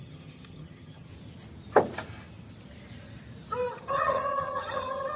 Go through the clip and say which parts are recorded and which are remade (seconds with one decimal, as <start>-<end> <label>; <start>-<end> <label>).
0.0-1.1 remade; 1.1-3.7 recorded; 3.7-5.2 remade

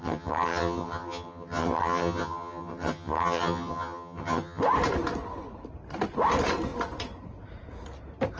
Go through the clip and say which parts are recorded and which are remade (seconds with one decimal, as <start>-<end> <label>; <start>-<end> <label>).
0.0-4.6 remade; 4.6-8.4 recorded

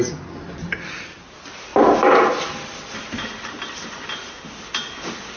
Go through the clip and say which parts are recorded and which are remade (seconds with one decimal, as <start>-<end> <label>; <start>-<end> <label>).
0.0-5.4 recorded

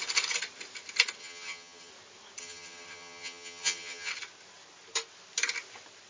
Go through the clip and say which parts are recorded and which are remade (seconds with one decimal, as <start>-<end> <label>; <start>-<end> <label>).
0.0-1.2 recorded; 1.2-1.9 remade; 1.9-2.4 recorded; 2.4-4.1 remade; 4.1-6.1 recorded

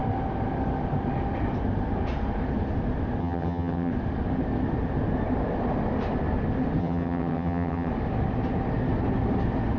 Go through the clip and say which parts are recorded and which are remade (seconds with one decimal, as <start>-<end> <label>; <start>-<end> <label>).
0.0-3.2 recorded; 3.2-3.9 remade; 3.9-6.8 recorded; 6.8-7.9 remade; 7.9-9.8 recorded

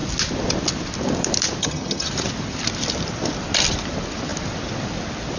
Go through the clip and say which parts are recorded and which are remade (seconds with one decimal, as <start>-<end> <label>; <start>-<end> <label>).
0.0-1.6 recorded; 1.6-2.1 remade; 2.1-5.4 recorded